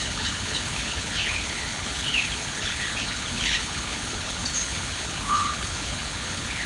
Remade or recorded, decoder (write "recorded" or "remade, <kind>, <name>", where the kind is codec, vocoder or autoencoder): remade, codec, HILCodec